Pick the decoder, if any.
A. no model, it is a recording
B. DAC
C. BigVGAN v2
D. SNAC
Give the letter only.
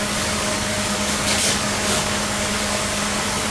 B